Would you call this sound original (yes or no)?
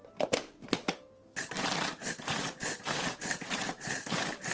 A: no